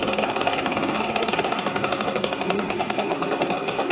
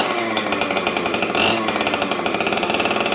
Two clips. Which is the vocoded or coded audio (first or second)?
first